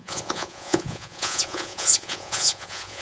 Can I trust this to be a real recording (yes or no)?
no